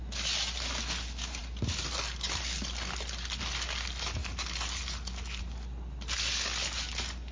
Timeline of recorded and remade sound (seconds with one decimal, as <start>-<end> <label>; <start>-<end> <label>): 0.0-7.3 recorded